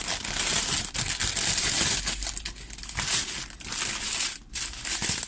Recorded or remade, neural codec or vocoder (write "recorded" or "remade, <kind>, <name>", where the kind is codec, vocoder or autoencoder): recorded